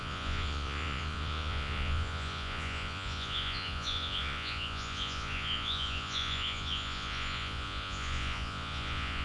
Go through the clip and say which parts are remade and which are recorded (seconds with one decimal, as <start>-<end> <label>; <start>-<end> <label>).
0.0-9.2 remade